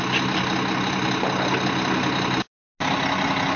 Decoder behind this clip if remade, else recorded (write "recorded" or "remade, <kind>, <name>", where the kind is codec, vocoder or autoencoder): recorded